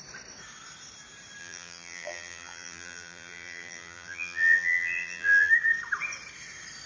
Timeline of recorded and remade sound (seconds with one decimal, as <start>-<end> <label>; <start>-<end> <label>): 0.0-1.4 recorded; 1.4-5.5 remade; 5.5-6.9 recorded